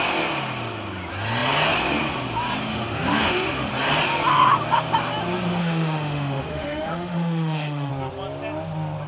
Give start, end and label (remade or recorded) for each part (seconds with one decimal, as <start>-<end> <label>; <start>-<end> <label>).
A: 0.0-2.7 recorded; 2.7-3.7 remade; 3.7-5.6 recorded; 5.6-7.9 remade; 7.9-9.1 recorded